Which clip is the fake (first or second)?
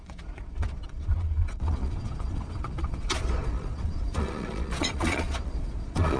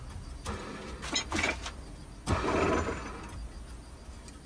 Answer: first